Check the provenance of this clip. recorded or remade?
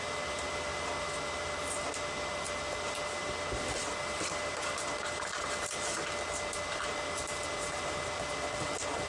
recorded